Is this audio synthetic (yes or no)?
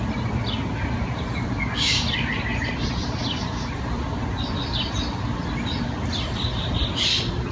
no